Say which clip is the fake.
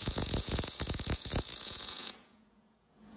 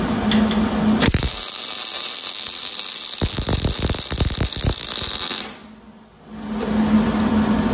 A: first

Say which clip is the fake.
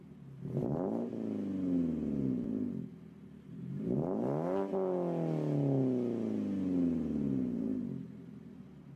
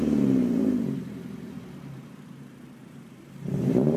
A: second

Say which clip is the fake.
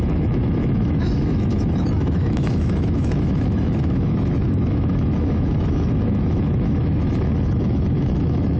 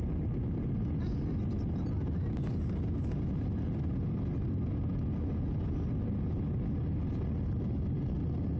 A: first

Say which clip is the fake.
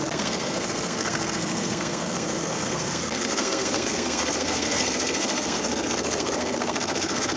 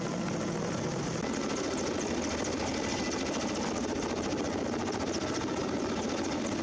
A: first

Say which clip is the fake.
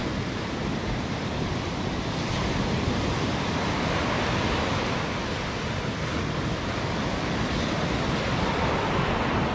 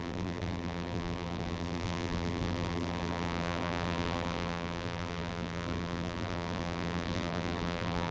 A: second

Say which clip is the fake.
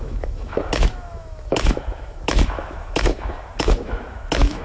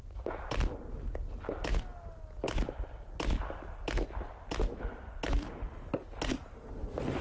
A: first